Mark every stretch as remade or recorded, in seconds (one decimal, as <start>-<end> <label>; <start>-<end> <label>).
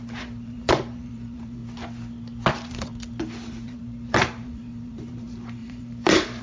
0.0-1.6 remade; 1.6-2.5 recorded; 2.5-2.9 remade; 2.9-3.5 recorded; 3.5-6.4 remade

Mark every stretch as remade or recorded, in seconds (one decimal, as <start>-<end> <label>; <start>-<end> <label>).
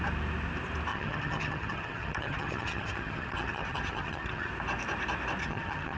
0.0-0.9 recorded; 0.9-4.5 remade; 4.5-5.4 recorded; 5.4-6.0 remade